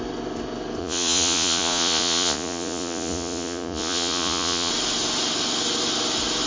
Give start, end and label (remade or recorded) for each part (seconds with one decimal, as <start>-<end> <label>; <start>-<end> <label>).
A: 0.0-0.8 recorded; 0.8-4.7 remade; 4.7-6.5 recorded